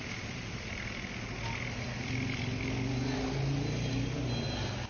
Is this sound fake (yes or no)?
no